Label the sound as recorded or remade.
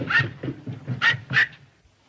recorded